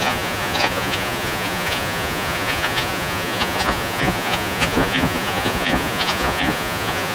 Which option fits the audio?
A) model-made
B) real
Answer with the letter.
A